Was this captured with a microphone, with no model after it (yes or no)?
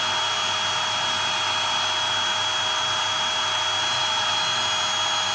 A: yes